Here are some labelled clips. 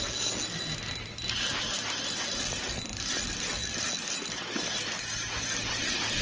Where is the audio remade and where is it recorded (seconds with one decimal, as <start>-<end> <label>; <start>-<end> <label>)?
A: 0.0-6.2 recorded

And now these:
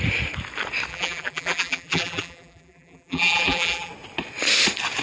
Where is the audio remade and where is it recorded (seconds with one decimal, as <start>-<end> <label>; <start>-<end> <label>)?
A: 0.0-0.9 recorded; 0.9-3.9 remade; 3.9-5.0 recorded

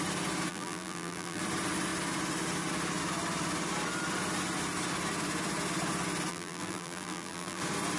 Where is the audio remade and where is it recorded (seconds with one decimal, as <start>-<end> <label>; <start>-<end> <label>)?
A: 0.0-0.5 recorded; 0.5-1.4 remade; 1.4-6.3 recorded; 6.3-7.6 remade; 7.6-8.0 recorded

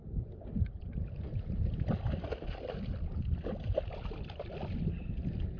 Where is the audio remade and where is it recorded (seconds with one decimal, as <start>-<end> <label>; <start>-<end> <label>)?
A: 0.0-0.8 remade; 0.8-5.6 recorded

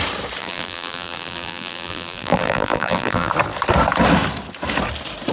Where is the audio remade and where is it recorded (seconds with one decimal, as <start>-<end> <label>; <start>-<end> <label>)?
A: 0.0-0.4 recorded; 0.4-3.3 remade; 3.3-5.3 recorded

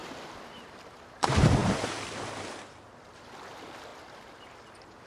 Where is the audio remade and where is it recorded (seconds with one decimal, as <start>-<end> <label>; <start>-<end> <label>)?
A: 0.0-3.1 remade; 3.1-3.9 recorded; 3.9-4.5 remade; 4.5-5.1 recorded

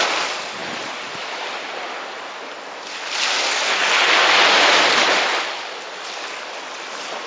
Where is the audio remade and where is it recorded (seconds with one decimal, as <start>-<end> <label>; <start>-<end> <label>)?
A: 0.0-0.6 recorded; 0.6-1.9 remade; 1.9-7.3 recorded